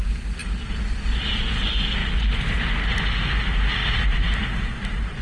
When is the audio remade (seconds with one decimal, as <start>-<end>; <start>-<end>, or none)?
0.4-1.5; 3.8-4.3